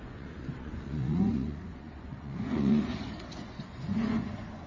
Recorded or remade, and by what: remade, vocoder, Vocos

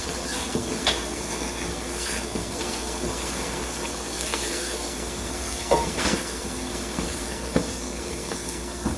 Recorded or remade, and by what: remade, codec, SNAC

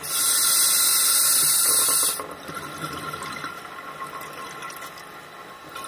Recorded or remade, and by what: recorded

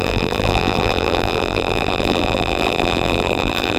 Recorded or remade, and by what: remade, vocoder, BigVGAN v2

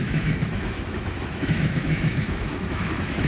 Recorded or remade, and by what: remade, autoencoder, DAC-VAE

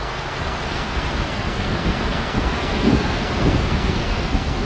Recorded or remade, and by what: remade, codec, SNAC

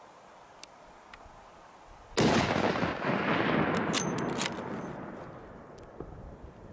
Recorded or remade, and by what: recorded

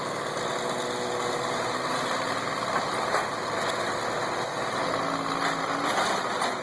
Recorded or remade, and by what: recorded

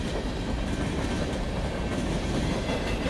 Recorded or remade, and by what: recorded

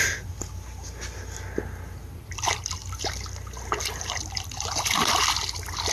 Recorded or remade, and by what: recorded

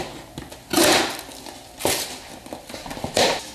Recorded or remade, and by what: recorded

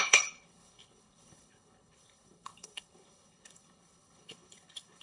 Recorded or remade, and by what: remade, codec, HILCodec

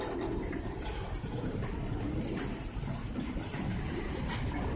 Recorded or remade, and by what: recorded